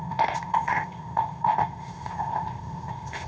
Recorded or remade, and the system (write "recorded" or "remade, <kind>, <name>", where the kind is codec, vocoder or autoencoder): remade, codec, ZipCodec